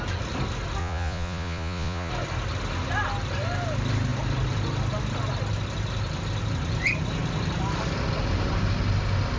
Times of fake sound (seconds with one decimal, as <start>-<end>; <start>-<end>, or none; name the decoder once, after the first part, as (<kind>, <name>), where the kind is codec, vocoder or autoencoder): 0.8-2.1 (vocoder, Vocos)